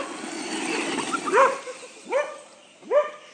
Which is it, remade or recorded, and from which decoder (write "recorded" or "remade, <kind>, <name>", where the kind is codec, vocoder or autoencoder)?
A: recorded